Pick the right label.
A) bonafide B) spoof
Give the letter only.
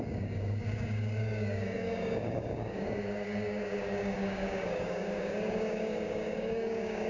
B